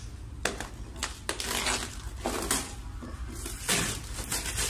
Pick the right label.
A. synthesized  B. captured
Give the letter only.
B